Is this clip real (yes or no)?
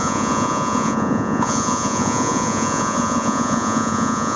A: no